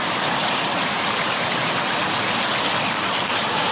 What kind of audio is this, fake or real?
fake